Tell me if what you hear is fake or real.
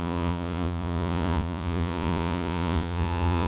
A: fake